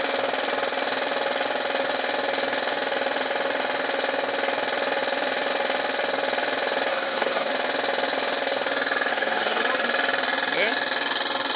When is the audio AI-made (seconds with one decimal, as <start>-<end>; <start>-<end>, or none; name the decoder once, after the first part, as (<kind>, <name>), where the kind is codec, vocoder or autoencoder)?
6.9-7.5 (codec, SNAC); 9.1-9.6